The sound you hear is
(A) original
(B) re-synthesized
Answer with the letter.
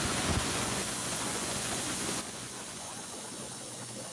B